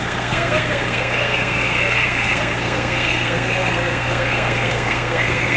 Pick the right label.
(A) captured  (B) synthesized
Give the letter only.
B